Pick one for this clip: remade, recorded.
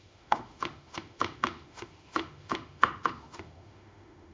remade